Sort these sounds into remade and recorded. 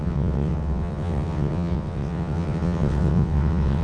remade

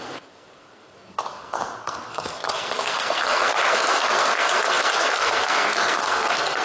remade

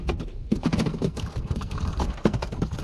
remade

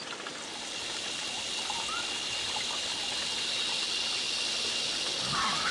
recorded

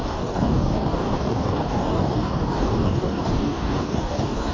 remade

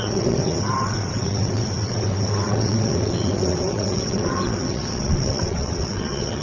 remade